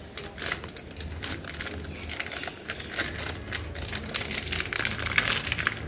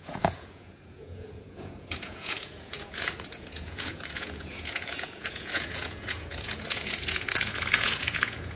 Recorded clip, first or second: first